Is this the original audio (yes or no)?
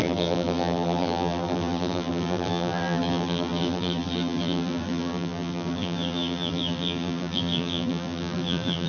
no